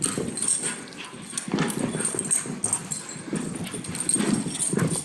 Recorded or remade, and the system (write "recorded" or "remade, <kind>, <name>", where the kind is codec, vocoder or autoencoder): recorded